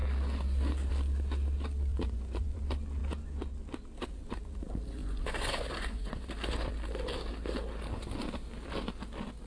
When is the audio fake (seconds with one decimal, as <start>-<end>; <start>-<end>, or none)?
1.9-2.6; 5.0-6.3